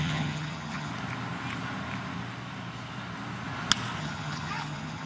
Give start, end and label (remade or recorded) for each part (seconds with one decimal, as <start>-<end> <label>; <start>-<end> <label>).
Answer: 0.0-0.9 remade; 0.9-4.0 recorded; 4.0-5.1 remade